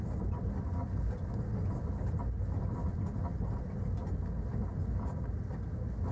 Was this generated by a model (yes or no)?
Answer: no